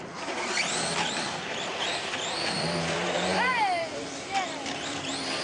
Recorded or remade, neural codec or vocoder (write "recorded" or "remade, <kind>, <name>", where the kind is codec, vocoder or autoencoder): remade, vocoder, BigVGAN v2